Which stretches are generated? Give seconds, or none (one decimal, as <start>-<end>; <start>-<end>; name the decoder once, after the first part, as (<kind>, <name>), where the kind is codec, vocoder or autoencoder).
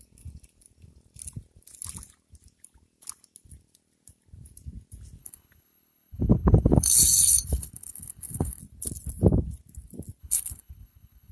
5.2-8.6 (codec, HILCodec); 10.2-11.3